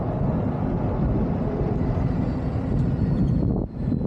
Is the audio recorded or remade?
recorded